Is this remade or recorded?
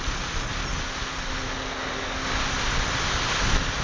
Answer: recorded